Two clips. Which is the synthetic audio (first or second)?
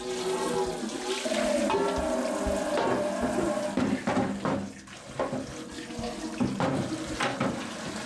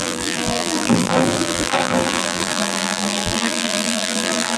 second